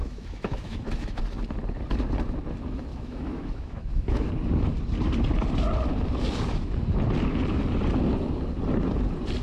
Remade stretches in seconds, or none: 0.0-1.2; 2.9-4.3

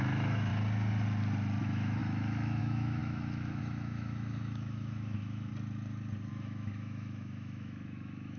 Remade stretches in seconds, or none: 0.0-0.5; 1.6-5.5; 6.3-8.4

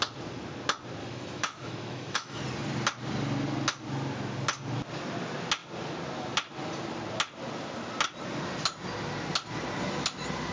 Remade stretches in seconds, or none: 1.0-2.4

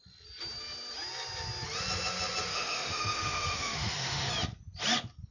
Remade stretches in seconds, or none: 2.5-4.3

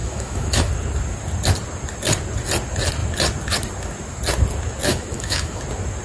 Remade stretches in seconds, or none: 0.0-0.7; 4.9-5.6